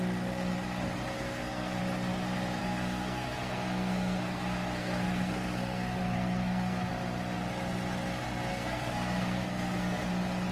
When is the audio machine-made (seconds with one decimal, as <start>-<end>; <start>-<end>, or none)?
1.1-1.8; 2.6-6.9; 8.5-10.1